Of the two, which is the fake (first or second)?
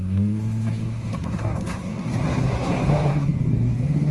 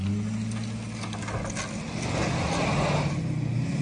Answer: first